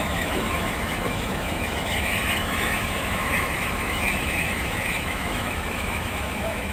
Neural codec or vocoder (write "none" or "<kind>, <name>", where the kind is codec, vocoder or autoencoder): autoencoder, DAC-VAE